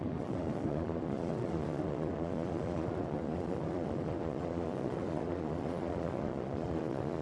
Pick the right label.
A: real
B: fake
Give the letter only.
B